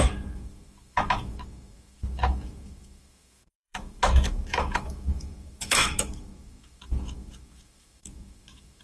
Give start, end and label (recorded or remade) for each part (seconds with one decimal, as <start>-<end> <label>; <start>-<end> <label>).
0.0-8.8 remade